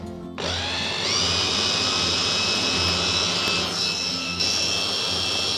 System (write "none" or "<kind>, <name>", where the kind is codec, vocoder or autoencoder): none